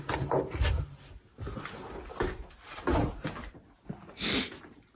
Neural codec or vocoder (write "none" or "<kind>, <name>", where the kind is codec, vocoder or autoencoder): none